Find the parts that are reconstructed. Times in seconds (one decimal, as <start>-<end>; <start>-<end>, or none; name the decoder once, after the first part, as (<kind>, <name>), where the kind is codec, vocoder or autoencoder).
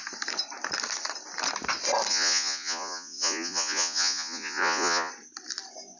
2.1-5.1 (vocoder, Vocos)